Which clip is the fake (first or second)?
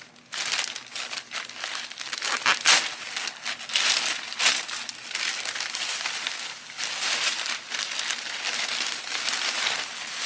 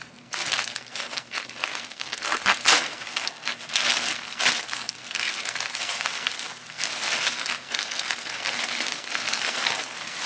second